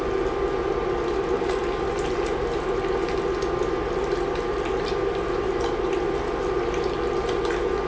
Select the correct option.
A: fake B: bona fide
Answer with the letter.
B